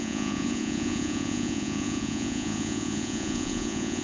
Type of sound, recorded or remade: remade